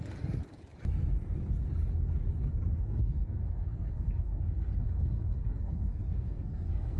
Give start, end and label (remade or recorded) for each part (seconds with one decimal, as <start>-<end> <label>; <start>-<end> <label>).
0.0-2.7 recorded; 2.7-7.0 remade